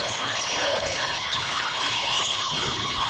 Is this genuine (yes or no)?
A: no